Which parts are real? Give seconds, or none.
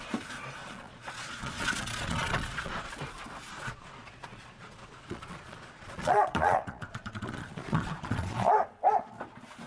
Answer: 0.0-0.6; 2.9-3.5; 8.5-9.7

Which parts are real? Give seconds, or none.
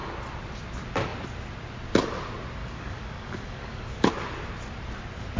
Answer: 0.0-2.6; 4.1-5.4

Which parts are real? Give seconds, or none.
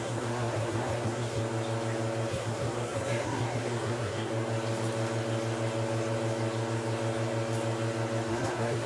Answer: 1.4-2.3; 4.3-8.3